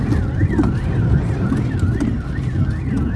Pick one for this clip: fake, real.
real